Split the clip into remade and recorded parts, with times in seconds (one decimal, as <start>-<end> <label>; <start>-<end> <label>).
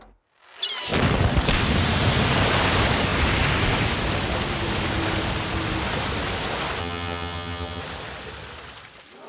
0.0-6.8 recorded; 6.8-7.8 remade; 7.8-9.3 recorded